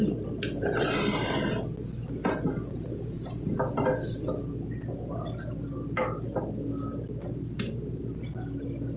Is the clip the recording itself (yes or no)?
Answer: yes